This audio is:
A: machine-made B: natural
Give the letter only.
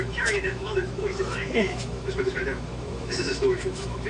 A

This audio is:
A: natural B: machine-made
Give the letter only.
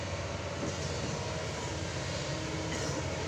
A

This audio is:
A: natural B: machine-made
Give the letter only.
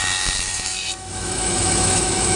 B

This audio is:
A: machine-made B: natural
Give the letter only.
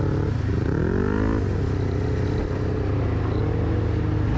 B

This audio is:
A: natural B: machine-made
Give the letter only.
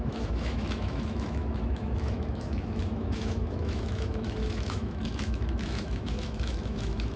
B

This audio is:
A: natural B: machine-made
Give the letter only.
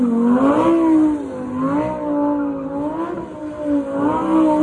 A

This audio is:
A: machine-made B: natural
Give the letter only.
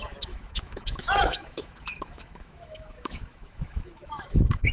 A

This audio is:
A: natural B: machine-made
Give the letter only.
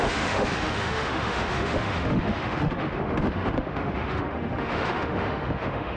B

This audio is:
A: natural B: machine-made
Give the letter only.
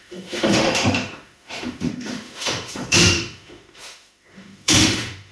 B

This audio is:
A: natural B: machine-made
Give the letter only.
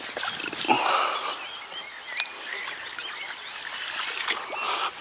A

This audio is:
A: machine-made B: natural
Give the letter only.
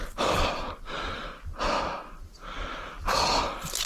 B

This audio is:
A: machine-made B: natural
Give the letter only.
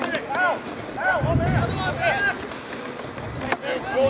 B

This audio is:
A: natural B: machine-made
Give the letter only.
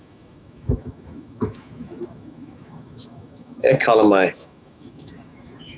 B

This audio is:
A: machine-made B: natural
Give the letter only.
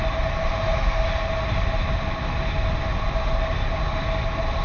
B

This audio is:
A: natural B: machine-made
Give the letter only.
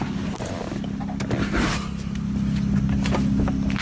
A